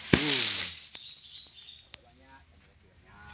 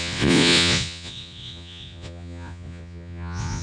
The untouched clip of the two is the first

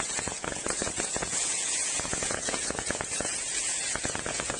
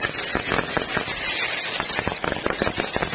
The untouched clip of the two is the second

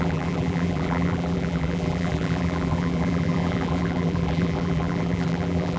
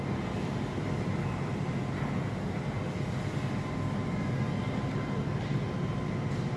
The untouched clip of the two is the second